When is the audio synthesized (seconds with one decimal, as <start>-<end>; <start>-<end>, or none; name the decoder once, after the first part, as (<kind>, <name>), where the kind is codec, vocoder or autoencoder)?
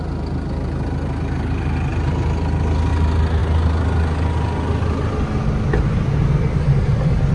none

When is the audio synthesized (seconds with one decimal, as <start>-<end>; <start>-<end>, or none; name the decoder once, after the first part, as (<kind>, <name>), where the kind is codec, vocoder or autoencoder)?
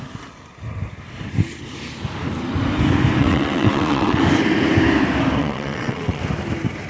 3.2-4.2 (vocoder, WaveNeXt); 5.4-6.2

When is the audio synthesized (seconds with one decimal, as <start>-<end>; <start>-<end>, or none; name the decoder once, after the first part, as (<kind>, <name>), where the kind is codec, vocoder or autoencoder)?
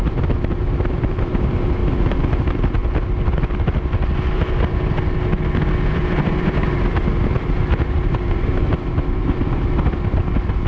0.0-1.8 (vocoder, BigVGAN v2); 2.4-2.8; 6.0-10.7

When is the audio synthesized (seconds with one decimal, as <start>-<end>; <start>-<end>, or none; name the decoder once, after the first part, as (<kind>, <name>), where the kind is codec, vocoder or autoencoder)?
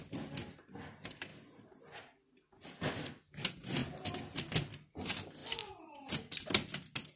none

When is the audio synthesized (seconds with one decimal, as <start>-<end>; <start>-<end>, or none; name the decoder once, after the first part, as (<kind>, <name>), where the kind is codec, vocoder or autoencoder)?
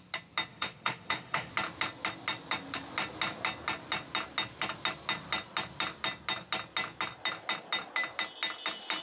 0.5-1.5 (autoencoder, DAC-VAE)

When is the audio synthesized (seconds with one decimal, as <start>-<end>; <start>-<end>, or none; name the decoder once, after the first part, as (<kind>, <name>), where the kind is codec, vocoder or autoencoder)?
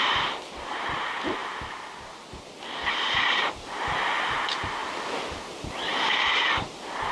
0.0-1.4 (vocoder, BigVGAN v2); 3.5-4.8; 6.1-7.1